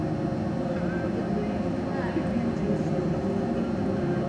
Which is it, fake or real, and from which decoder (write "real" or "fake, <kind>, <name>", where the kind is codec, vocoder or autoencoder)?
real